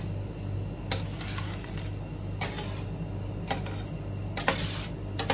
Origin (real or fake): real